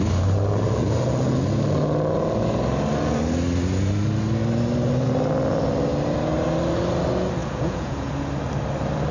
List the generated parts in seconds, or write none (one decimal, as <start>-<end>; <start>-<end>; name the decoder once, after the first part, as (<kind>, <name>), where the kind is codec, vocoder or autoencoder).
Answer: 7.4-8.1 (vocoder, Vocos)